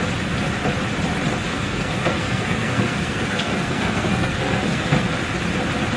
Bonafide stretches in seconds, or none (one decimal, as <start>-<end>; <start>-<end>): 0.0-1.5; 5.1-6.0